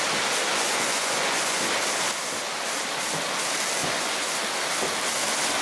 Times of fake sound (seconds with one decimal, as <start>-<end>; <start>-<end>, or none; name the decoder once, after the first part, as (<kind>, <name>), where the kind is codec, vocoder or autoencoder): 0.5-1.6 (vocoder, Vocos); 3.8-4.4